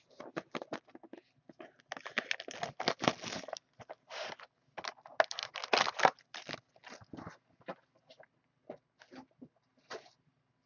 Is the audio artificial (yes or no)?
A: no